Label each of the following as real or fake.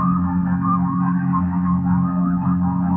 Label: fake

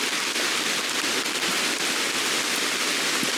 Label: real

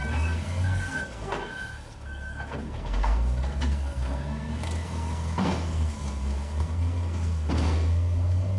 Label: fake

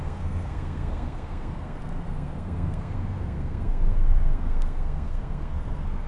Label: fake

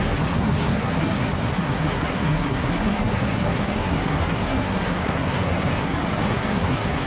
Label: fake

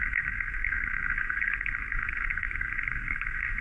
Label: fake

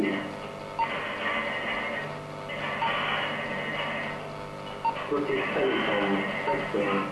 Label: real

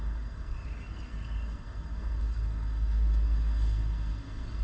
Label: fake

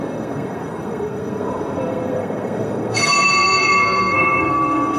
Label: fake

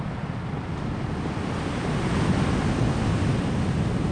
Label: real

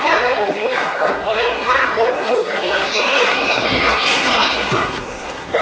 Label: fake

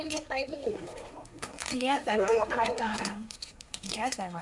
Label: fake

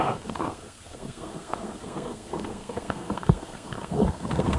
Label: fake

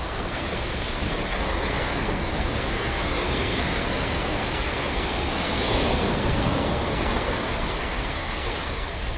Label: fake